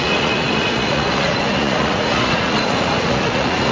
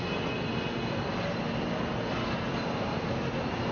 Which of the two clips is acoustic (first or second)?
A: second